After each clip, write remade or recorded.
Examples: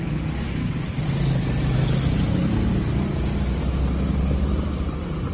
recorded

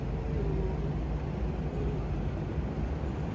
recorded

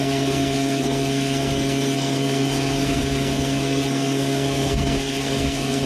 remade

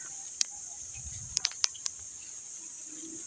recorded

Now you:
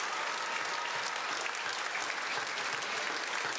recorded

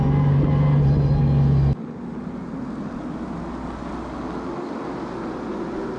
recorded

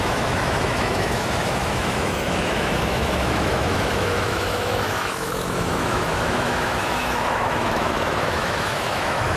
remade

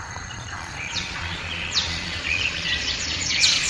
remade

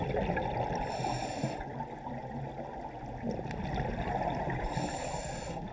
recorded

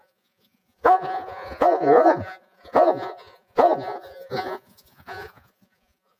remade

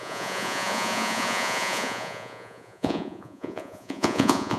remade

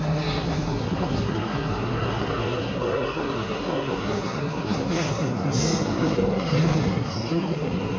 remade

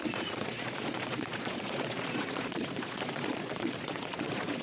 remade